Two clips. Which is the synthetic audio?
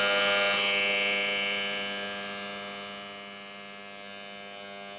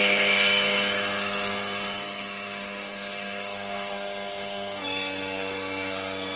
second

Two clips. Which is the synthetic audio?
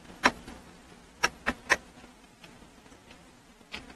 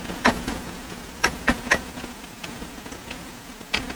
second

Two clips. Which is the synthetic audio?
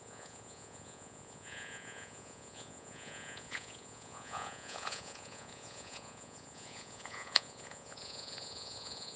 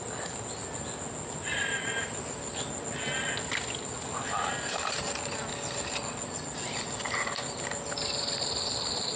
first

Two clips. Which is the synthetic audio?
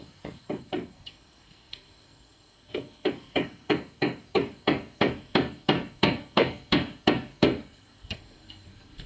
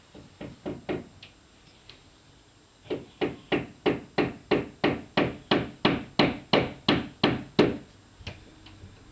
first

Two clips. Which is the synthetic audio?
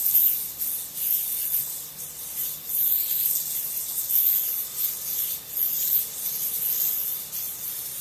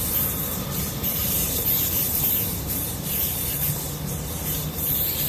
second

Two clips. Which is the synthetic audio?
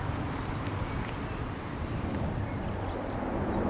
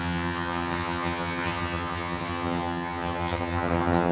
second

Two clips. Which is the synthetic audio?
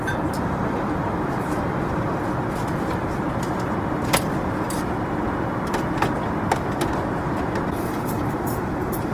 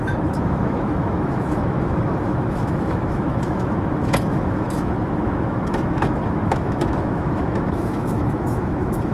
second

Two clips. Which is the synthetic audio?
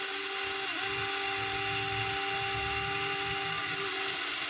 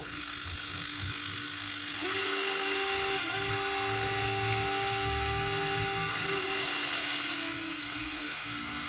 second